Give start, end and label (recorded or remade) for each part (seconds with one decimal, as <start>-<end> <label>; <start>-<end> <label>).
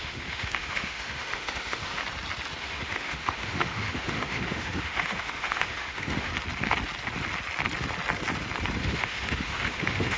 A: 0.0-2.0 remade; 2.0-2.6 recorded; 2.6-6.3 remade; 6.3-8.8 recorded; 8.8-10.2 remade